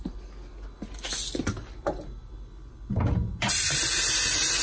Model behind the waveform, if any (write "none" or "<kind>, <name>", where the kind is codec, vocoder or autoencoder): none